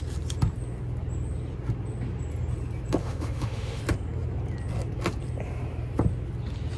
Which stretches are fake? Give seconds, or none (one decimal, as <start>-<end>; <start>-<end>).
3.0-3.8